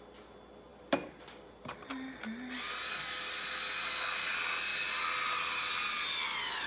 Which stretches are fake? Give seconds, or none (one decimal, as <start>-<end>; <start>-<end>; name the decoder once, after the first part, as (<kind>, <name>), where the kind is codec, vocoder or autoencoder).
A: none